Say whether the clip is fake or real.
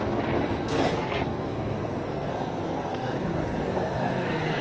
fake